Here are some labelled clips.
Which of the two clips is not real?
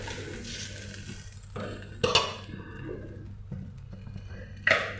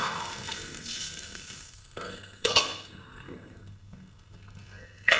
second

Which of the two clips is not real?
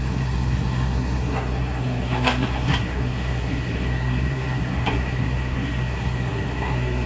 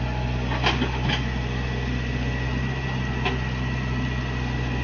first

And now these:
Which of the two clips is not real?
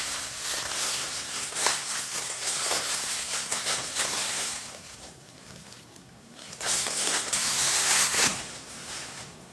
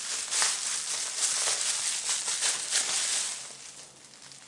first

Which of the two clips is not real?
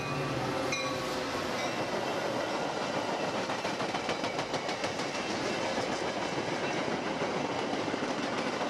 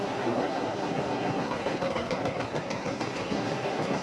second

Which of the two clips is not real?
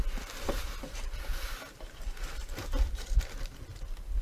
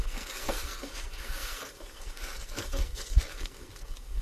second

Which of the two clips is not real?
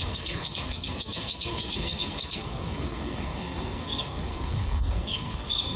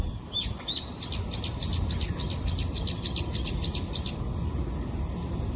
first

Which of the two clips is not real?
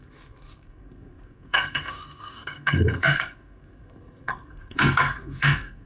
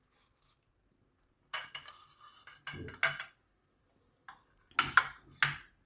first